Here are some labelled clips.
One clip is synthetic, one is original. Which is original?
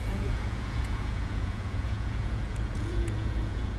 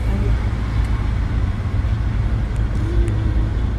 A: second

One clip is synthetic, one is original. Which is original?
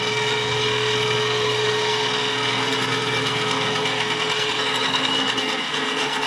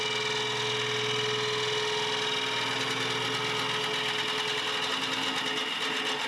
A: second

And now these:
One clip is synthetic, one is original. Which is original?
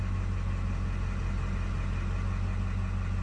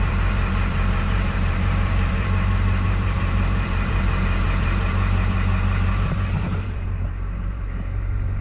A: first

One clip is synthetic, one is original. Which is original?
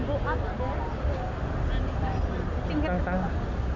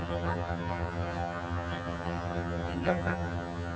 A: first